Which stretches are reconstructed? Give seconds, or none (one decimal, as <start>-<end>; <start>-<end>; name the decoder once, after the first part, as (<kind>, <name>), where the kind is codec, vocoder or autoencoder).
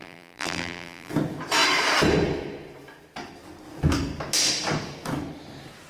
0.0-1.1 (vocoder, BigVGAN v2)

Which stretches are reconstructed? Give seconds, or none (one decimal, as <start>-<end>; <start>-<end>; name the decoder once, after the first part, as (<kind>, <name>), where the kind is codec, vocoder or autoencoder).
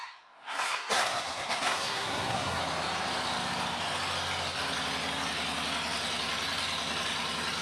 0.0-2.6 (codec, SNAC)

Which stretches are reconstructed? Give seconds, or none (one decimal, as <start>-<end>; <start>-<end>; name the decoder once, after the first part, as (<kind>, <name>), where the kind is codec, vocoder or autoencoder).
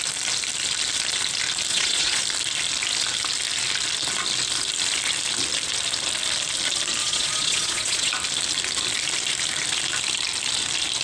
1.7-2.2 (vocoder, Vocos); 7.0-8.1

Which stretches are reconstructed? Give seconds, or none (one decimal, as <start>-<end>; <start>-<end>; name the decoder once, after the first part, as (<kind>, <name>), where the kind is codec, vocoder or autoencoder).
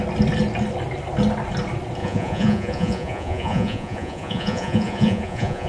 2.0-5.7 (vocoder, Vocos)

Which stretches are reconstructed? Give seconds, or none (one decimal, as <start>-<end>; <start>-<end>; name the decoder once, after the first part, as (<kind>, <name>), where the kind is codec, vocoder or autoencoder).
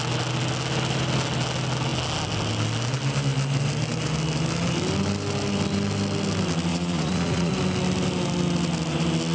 6.7-7.5 (vocoder, Vocos)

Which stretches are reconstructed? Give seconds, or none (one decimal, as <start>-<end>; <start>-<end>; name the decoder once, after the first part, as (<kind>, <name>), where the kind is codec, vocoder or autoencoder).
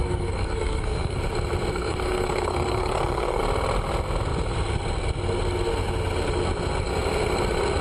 0.0-1.2 (codec, SNAC); 1.7-3.4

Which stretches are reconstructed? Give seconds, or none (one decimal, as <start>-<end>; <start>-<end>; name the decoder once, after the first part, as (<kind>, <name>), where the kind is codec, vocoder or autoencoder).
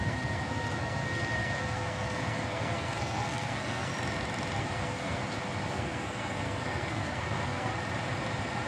0.0-3.9 (codec, SNAC); 4.6-5.2; 5.7-7.7